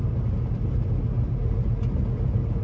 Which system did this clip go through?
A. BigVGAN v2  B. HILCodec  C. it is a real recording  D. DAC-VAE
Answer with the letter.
C